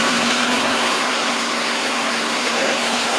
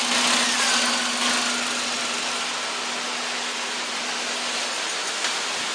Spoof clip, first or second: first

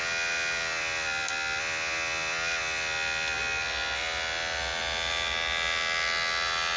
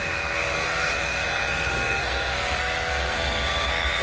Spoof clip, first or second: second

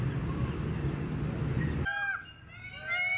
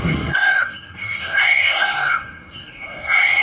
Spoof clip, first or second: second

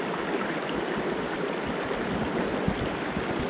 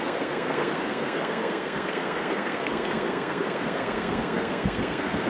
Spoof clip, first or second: second